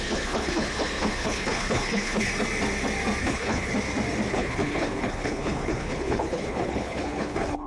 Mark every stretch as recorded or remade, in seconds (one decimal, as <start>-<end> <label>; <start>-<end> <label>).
0.0-2.3 remade; 2.3-3.2 recorded; 3.2-3.7 remade; 3.7-4.3 recorded; 4.3-7.7 remade